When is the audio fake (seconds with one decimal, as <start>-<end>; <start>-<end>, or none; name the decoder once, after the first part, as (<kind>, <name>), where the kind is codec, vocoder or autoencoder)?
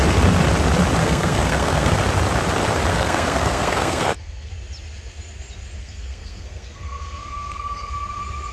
1.0-2.0 (codec, SNAC); 2.9-4.5; 5.8-7.9